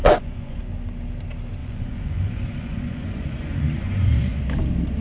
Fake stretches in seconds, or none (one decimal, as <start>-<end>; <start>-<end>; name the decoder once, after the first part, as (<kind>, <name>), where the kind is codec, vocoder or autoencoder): 0.0-0.6 (vocoder, Vocos); 1.6-4.4